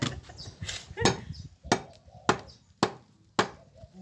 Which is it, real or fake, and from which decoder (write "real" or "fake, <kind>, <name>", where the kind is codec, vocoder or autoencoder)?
real